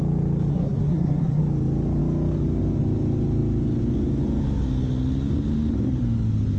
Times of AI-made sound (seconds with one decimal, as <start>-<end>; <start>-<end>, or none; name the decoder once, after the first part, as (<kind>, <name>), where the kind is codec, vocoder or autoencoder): 0.5-1.4 (codec, SNAC)